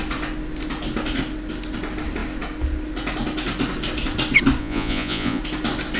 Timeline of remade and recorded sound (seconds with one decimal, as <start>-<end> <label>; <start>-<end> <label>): 0.0-4.6 recorded; 4.6-5.4 remade; 5.4-6.0 recorded